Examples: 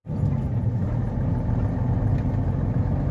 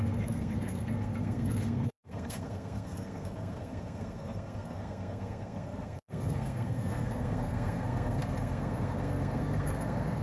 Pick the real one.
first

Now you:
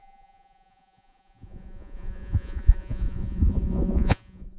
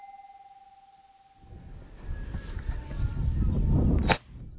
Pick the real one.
second